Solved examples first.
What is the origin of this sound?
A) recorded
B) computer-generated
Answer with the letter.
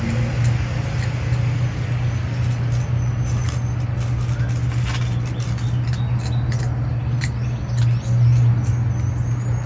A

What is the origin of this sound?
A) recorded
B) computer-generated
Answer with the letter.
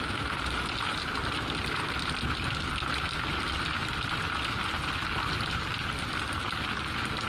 A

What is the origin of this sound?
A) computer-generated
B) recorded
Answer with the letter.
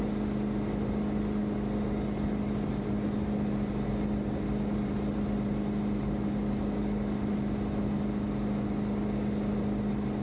B